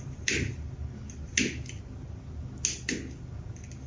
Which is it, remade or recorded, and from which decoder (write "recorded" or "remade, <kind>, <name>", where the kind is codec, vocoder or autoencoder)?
recorded